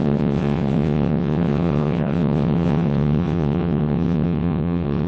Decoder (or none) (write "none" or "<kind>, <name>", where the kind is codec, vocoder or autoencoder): vocoder, WaveNeXt